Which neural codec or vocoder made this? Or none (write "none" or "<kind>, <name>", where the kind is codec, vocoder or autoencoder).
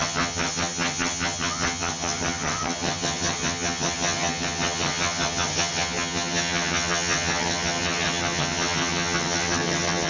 vocoder, HiFi-GAN